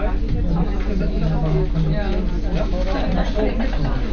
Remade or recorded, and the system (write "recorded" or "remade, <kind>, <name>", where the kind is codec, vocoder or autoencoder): recorded